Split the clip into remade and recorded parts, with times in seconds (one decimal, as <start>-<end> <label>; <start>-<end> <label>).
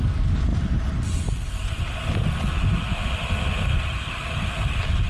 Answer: 0.0-5.1 recorded